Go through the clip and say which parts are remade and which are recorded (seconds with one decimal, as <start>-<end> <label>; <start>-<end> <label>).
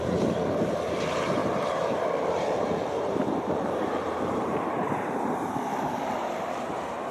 0.0-7.1 remade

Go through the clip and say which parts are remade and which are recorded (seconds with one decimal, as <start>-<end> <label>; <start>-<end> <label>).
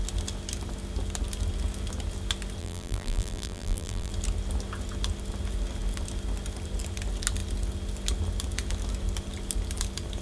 0.0-2.6 recorded; 2.6-4.1 remade; 4.1-10.2 recorded